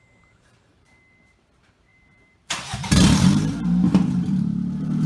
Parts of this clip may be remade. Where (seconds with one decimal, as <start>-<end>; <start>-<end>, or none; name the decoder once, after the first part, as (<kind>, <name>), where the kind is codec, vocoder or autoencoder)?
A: 0.0-5.1 (vocoder, BigVGAN v2)